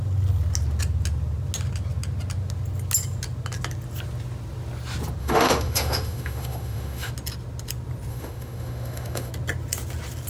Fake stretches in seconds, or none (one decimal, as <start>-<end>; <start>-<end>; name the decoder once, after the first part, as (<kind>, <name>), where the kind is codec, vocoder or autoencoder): 5.2-7.1 (autoencoder, DAC-VAE); 8.1-9.3